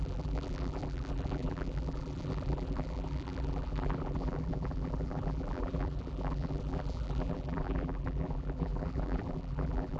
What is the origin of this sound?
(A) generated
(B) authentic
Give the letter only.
A